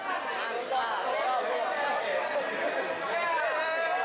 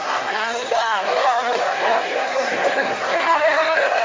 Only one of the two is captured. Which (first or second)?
first